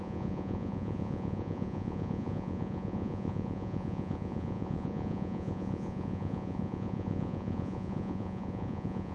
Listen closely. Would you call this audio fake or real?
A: fake